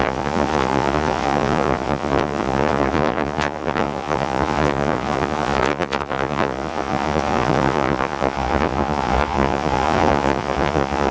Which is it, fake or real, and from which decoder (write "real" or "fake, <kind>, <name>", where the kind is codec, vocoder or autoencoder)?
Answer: fake, vocoder, Vocos